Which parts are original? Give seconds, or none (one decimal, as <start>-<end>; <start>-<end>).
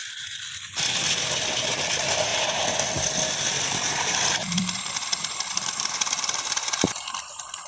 0.0-0.6